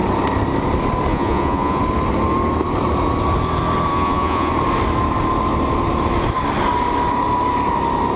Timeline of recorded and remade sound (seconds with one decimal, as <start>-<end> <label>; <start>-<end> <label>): 0.0-1.1 recorded; 1.1-1.8 remade; 1.8-3.9 recorded; 3.9-4.5 remade; 4.5-8.2 recorded

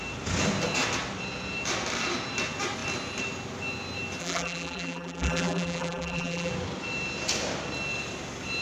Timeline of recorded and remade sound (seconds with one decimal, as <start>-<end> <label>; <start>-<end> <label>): 0.0-4.2 recorded; 4.2-6.5 remade; 6.5-8.6 recorded

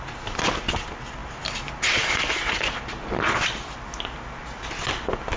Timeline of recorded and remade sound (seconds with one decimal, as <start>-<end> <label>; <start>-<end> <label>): 0.0-5.4 recorded

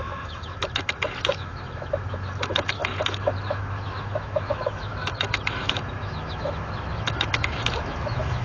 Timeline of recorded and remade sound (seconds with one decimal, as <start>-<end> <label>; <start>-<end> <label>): 0.0-8.4 remade

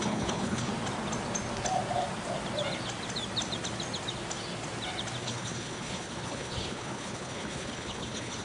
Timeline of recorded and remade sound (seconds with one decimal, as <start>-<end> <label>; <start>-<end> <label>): 0.0-0.7 remade; 0.7-5.2 recorded; 5.2-8.4 remade

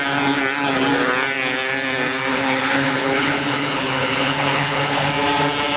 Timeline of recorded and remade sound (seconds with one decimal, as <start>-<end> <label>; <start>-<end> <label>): 0.0-2.3 recorded; 2.3-5.1 remade; 5.1-5.8 recorded

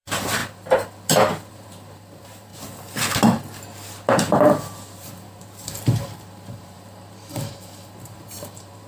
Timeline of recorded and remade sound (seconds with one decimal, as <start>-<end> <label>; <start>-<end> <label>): 0.0-0.4 remade; 0.4-1.5 recorded; 1.5-2.5 remade; 2.5-4.1 recorded; 4.1-8.9 remade